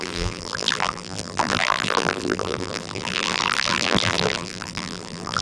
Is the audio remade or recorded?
remade